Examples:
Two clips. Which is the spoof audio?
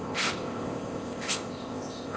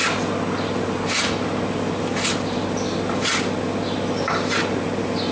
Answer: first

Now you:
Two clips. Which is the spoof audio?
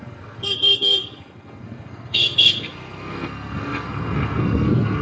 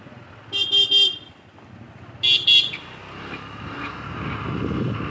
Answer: first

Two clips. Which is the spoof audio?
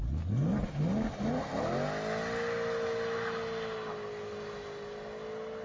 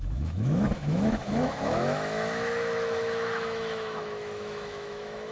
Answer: second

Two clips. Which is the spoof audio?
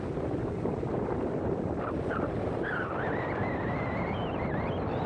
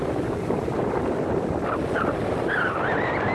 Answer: first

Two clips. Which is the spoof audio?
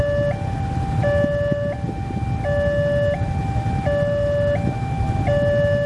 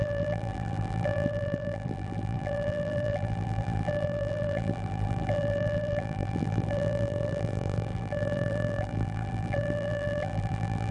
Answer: second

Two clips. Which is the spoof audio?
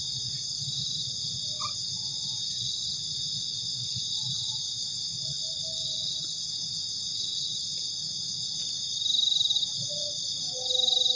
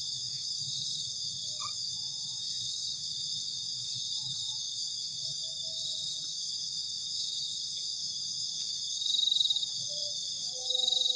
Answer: second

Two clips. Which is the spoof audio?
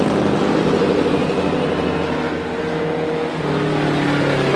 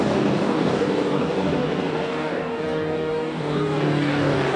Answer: second